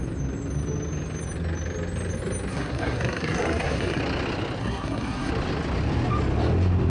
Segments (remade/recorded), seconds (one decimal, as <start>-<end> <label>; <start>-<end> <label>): 0.0-2.5 recorded; 2.5-4.0 remade; 4.0-4.6 recorded; 4.6-5.3 remade; 5.3-6.9 recorded